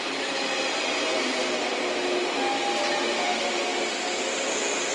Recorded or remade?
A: recorded